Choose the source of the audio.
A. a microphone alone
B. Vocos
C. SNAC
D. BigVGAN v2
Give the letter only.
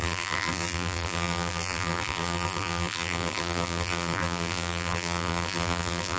D